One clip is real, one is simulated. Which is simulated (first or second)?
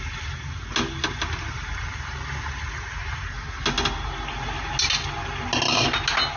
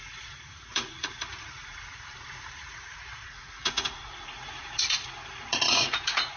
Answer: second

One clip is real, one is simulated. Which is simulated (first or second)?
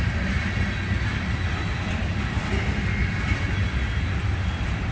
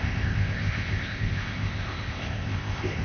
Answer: second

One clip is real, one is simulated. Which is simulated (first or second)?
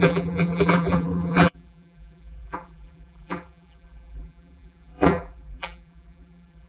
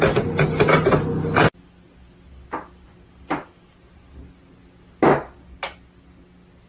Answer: first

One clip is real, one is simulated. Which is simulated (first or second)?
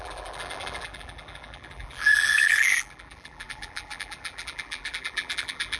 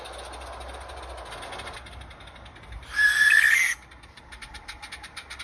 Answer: first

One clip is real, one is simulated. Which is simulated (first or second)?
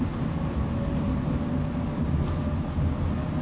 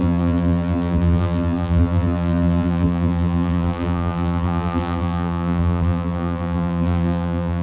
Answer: second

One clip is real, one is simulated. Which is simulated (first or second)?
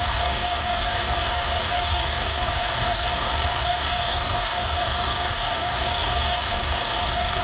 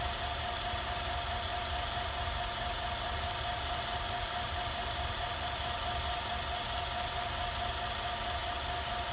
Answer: first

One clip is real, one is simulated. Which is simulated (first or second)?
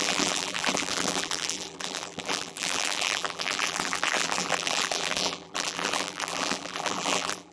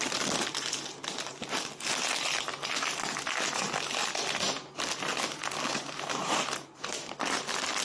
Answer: first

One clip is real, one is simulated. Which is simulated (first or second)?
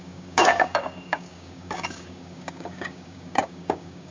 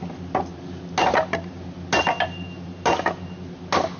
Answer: first